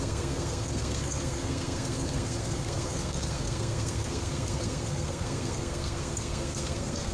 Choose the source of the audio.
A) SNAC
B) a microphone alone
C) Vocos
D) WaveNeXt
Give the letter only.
A